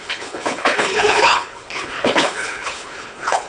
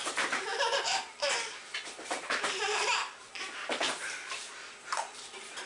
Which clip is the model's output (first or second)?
first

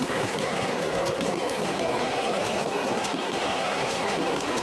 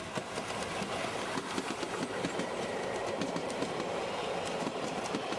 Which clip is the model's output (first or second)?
first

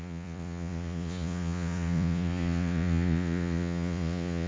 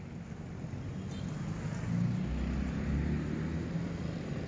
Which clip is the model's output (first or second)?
first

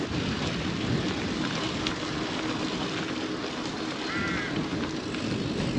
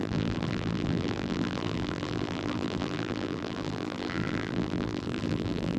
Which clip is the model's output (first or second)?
second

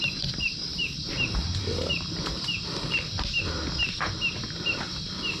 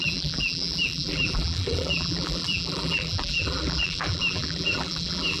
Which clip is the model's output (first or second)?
second